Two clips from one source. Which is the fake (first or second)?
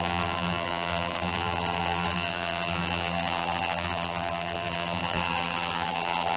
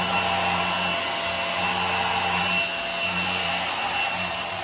first